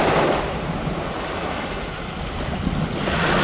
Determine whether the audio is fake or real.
real